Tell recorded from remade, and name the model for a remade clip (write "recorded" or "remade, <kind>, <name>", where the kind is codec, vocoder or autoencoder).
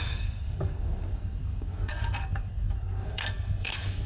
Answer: remade, codec, SNAC